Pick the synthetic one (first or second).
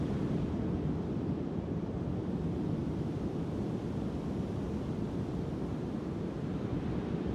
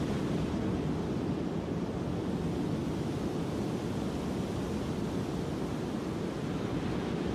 first